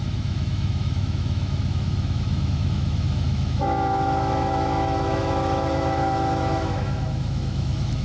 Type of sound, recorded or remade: remade